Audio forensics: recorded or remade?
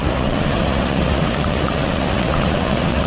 remade